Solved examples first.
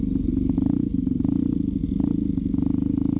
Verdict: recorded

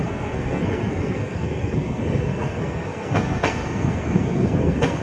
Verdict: remade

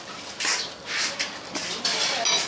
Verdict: recorded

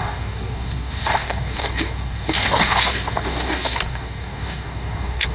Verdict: remade